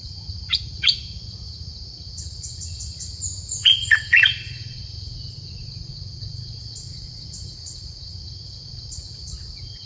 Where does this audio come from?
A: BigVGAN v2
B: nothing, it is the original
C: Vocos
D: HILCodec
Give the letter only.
C